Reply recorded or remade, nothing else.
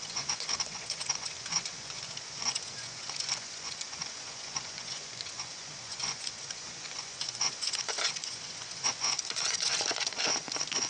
remade